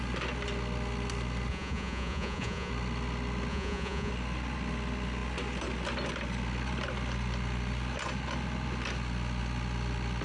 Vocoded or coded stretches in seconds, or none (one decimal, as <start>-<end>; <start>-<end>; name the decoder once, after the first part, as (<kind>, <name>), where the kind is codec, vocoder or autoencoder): 1.5-2.7 (vocoder, Vocos); 3.5-4.1